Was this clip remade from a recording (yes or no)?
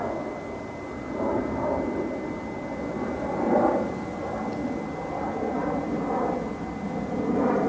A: no